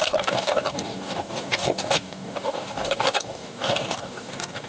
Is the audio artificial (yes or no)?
yes